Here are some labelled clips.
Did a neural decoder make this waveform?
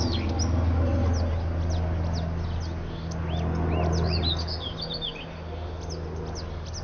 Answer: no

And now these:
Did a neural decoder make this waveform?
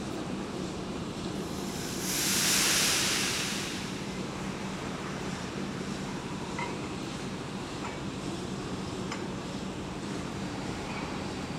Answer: yes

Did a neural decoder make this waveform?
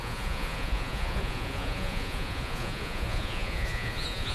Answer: yes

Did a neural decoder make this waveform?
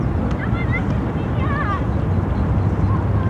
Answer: no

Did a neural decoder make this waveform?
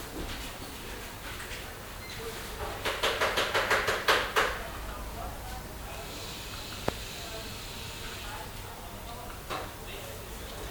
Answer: no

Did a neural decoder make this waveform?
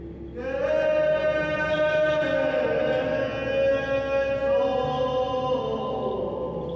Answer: no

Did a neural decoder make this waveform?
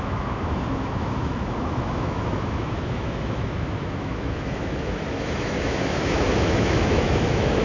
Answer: yes